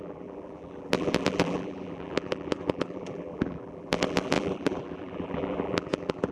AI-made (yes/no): yes